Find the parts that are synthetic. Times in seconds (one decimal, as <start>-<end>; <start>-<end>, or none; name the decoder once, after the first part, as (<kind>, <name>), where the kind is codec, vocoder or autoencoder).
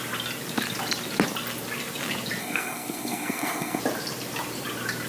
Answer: 2.4-3.8 (codec, SNAC)